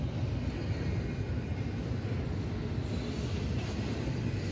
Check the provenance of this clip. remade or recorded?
recorded